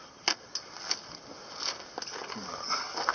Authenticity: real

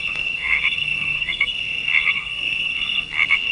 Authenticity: fake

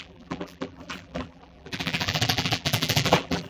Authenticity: fake